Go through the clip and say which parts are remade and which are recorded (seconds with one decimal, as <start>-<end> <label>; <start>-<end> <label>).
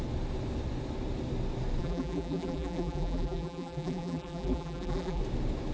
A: 0.0-1.8 recorded; 1.8-5.2 remade; 5.2-5.7 recorded